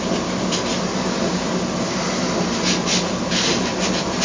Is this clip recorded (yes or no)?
yes